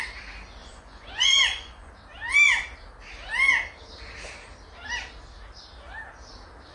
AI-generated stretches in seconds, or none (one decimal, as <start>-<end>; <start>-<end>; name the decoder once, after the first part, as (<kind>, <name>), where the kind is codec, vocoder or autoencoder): 0.6-1.9 (vocoder, Vocos)